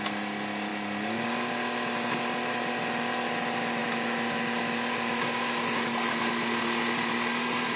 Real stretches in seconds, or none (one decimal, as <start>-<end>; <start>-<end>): 0.0-7.8